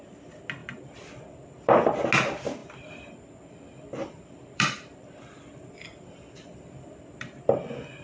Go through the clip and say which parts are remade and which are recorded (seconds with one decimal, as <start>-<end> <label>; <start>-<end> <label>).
0.0-0.6 recorded; 0.6-1.8 remade; 1.8-2.6 recorded; 2.6-7.4 remade; 7.4-8.0 recorded